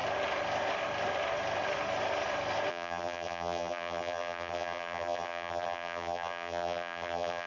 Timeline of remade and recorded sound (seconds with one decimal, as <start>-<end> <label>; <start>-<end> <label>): 0.0-2.7 recorded; 2.7-7.5 remade